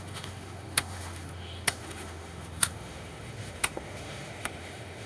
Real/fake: fake